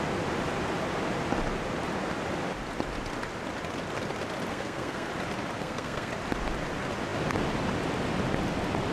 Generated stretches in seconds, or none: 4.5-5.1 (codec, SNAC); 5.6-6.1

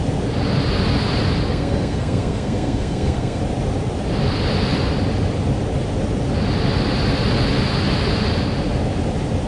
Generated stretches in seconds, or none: 1.5-3.4 (codec, SNAC)

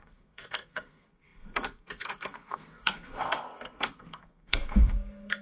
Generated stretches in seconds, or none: 0.0-5.4 (codec, SNAC)

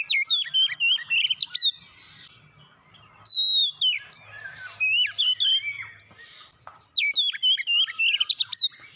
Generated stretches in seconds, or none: none

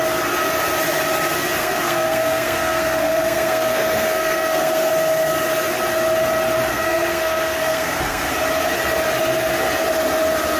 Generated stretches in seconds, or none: 1.6-4.9 (codec, SNAC); 6.7-8.3

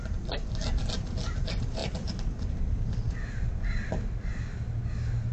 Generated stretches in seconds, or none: none

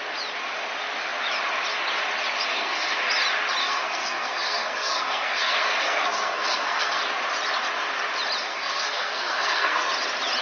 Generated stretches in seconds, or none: 2.5-3.1 (codec, SNAC); 3.6-7.0; 8.4-9.9